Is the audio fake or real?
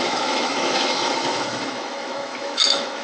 fake